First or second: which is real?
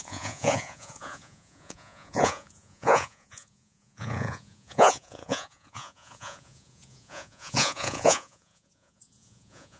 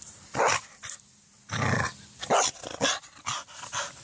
second